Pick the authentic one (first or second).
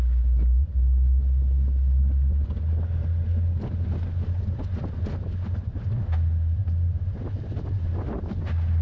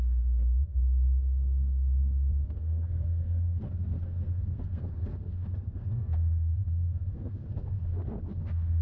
first